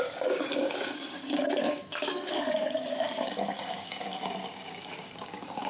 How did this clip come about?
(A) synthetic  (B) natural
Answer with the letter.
A